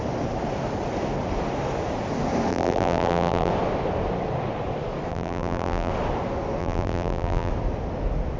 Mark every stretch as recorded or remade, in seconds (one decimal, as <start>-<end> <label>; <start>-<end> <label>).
0.0-2.5 recorded; 2.5-3.5 remade; 3.5-5.1 recorded; 5.1-5.9 remade; 5.9-6.6 recorded; 6.6-7.5 remade; 7.5-8.4 recorded